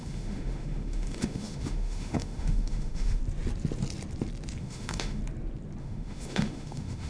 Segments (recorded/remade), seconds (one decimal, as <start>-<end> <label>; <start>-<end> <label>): 0.0-3.2 remade; 3.2-4.6 recorded; 4.6-5.2 remade; 5.2-5.8 recorded; 5.8-7.1 remade